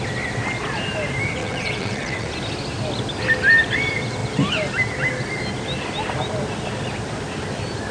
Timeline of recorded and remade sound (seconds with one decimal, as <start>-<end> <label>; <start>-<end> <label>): 0.0-1.4 recorded; 1.4-2.3 remade; 2.3-7.9 recorded